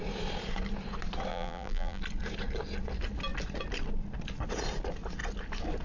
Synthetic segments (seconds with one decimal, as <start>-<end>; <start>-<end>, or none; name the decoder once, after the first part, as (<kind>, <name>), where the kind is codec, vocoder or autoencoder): 1.3-2.0 (vocoder, BigVGAN v2)